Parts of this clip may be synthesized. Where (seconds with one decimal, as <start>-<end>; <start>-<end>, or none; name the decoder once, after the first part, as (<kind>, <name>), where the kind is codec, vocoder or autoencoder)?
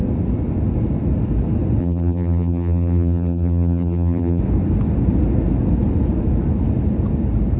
1.8-4.4 (vocoder, BigVGAN v2)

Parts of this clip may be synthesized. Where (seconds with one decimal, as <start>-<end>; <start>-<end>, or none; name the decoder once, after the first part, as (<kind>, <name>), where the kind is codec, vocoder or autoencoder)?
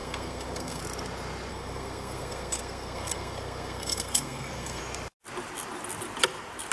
0.0-0.8 (codec, SNAC); 1.5-4.8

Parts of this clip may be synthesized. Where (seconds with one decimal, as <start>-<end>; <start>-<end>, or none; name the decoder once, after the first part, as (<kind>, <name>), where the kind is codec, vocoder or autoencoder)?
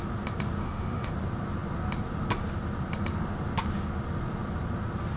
0.6-1.1 (autoencoder, DAC-VAE)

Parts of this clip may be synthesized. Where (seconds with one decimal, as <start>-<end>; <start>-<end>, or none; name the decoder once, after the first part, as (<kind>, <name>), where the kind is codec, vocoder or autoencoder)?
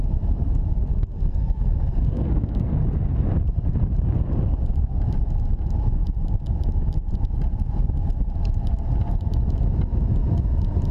0.9-2.8 (codec, SNAC)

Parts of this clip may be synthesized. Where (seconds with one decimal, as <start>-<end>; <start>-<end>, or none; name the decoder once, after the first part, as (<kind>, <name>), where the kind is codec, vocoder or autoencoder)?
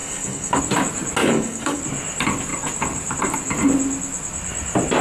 0.0-0.6 (codec, DAC); 1.2-1.8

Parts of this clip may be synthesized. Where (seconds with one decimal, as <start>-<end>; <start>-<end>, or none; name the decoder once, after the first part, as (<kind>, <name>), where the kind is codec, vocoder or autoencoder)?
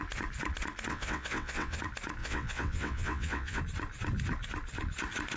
0.9-1.8 (vocoder, WaveNeXt); 2.2-3.6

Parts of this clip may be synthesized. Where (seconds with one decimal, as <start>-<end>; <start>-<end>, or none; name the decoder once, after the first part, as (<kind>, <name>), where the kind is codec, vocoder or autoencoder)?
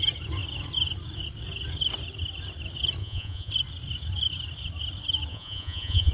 3.0-3.5 (vocoder, Vocos); 5.3-6.1